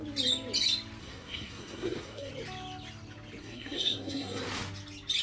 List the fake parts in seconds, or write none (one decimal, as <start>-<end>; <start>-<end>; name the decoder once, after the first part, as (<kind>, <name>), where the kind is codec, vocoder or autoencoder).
1.0-2.3 (codec, SNAC); 3.4-4.4